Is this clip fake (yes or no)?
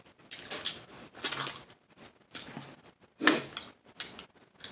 no